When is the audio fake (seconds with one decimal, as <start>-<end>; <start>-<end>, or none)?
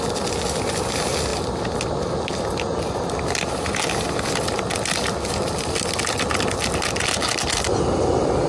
none